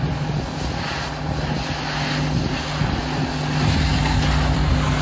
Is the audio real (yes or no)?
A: yes